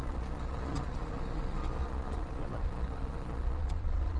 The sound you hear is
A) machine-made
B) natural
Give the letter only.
A